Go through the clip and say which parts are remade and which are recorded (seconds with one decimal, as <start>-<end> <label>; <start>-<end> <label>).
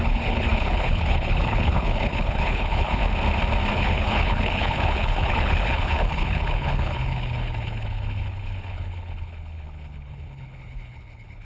0.0-3.0 remade; 3.0-3.7 recorded; 3.7-11.4 remade